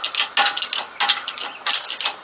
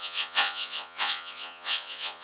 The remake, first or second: second